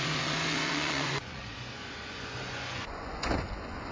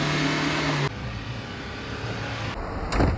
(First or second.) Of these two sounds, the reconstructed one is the first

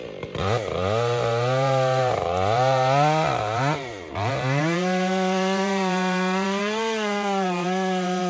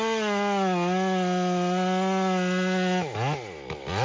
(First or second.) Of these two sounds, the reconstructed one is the first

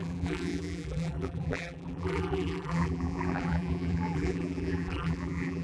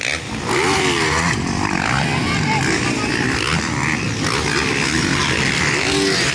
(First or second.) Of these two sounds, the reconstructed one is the first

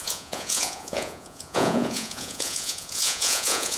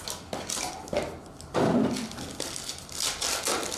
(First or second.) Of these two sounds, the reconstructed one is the first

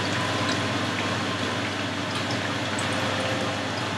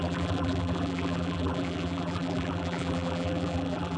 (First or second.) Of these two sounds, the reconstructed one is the second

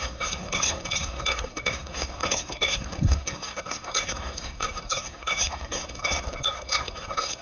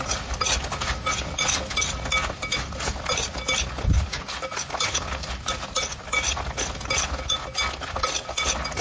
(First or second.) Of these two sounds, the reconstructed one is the first